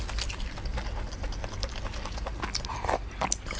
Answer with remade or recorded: recorded